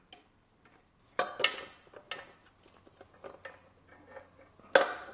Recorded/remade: recorded